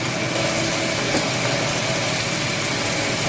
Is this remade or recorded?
recorded